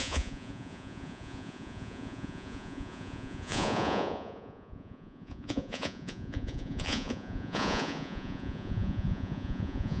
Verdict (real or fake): fake